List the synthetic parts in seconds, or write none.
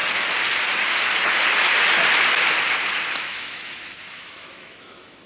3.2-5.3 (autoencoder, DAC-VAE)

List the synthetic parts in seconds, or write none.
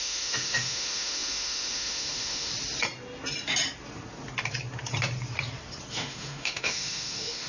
0.0-2.5 (autoencoder, DAC-VAE); 5.9-7.5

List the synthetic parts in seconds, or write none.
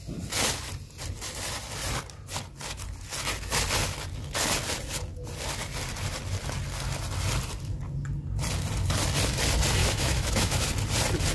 9.8-10.7 (autoencoder, DAC-VAE)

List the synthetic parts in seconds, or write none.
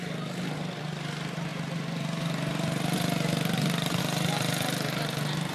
none